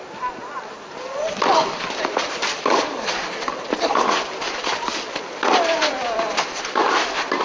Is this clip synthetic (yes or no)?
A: yes